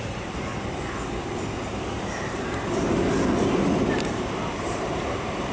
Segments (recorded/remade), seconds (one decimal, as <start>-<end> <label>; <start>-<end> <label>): 0.0-0.5 remade; 0.5-3.8 recorded; 3.8-5.5 remade